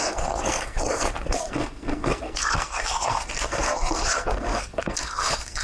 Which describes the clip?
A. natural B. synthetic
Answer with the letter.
B